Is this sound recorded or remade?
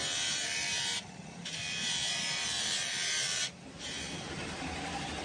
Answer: remade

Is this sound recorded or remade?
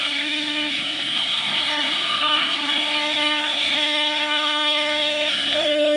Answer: remade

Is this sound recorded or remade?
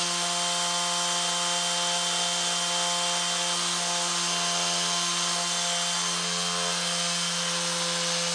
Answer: recorded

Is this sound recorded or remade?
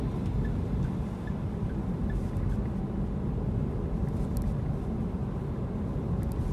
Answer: recorded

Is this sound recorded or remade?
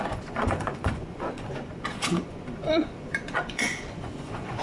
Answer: remade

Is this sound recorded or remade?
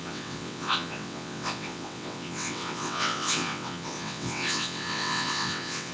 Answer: remade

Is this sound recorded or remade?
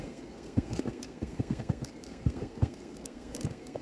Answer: remade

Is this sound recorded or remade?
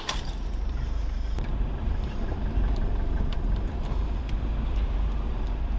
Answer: remade